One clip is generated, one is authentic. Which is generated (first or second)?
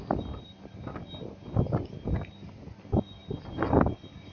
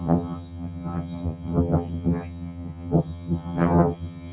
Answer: second